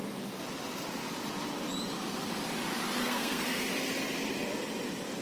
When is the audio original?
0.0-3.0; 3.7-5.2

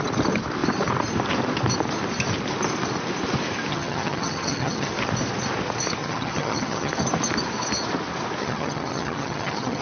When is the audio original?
0.0-3.7; 4.9-6.0; 6.9-8.4

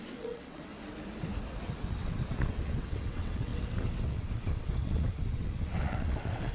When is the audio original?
0.7-1.7

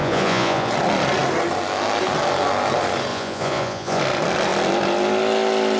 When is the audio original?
0.7-3.1; 4.0-5.8

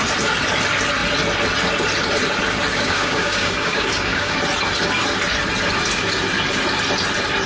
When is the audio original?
0.0-2.7; 4.4-7.5

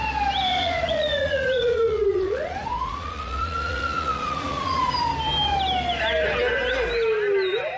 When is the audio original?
0.0-0.5; 4.9-7.8

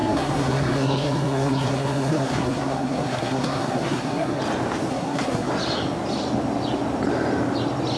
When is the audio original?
4.4-4.9; 5.5-8.0

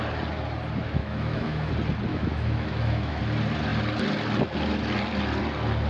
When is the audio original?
0.0-1.0; 1.7-2.1; 3.2-5.9